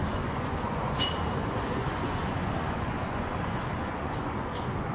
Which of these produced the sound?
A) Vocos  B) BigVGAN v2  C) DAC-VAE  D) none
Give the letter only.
A